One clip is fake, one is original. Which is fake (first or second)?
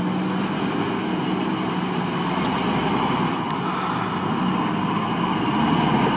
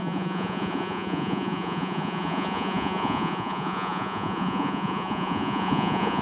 second